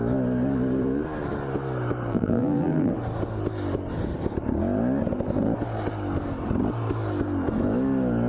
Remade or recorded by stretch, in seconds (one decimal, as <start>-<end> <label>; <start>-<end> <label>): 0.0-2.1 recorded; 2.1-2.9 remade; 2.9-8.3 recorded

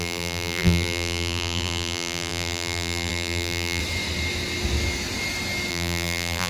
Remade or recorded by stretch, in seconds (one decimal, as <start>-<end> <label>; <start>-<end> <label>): 0.0-3.8 remade; 3.8-5.7 recorded; 5.7-6.5 remade

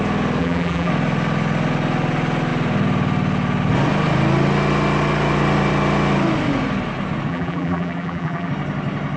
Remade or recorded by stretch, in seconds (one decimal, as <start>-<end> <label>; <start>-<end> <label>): 0.0-0.4 recorded; 0.4-0.9 remade; 0.9-7.3 recorded; 7.3-8.5 remade; 8.5-9.2 recorded

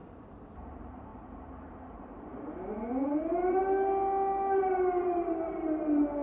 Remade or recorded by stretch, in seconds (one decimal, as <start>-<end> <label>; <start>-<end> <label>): 0.0-3.6 remade; 3.6-4.6 recorded; 4.6-6.2 remade

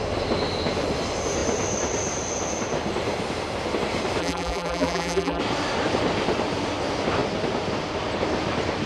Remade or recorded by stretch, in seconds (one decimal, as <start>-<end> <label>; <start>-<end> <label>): 0.0-4.2 recorded; 4.2-5.4 remade; 5.4-8.9 recorded